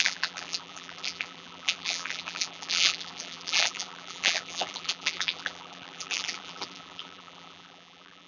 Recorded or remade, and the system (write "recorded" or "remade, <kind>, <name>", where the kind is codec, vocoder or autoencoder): remade, vocoder, BigVGAN v2